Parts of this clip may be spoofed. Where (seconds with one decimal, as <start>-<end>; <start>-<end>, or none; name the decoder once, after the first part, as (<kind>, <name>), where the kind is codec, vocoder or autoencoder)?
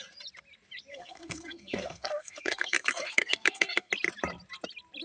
0.9-3.9 (codec, SNAC)